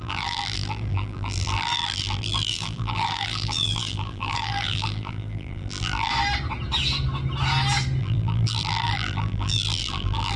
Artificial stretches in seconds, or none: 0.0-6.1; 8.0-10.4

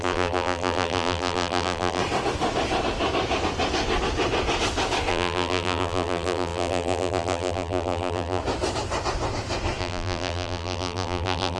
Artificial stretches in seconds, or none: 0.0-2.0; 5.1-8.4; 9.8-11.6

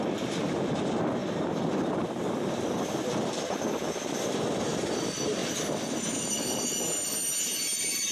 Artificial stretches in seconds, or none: 1.2-4.6

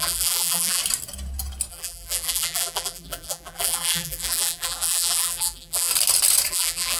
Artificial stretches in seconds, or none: 0.0-0.8; 1.7-5.9; 6.5-7.0

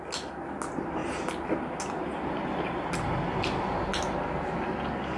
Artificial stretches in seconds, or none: none

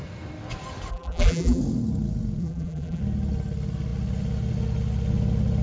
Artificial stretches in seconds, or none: 0.9-1.6; 2.4-3.0

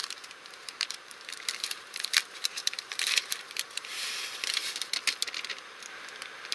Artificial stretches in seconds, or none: 0.0-3.9

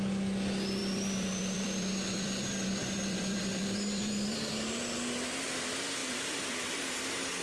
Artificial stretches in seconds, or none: 0.8-4.5; 6.0-6.8